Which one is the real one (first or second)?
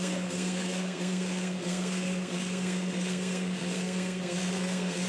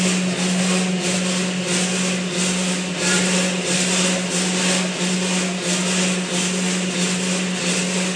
second